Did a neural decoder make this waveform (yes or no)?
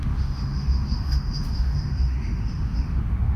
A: yes